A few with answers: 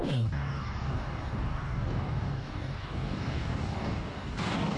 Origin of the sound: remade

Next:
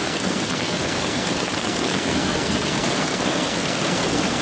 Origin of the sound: remade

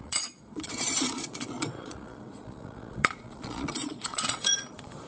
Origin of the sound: remade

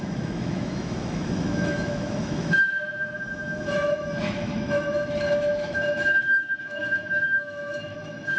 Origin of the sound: remade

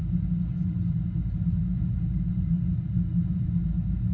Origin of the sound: recorded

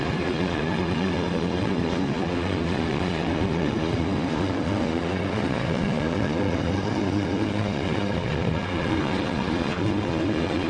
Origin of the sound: remade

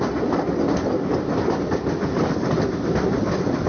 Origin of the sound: recorded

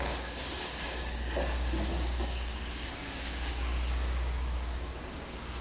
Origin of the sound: remade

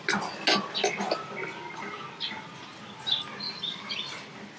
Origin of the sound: recorded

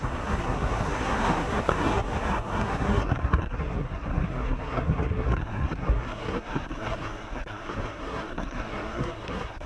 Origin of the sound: remade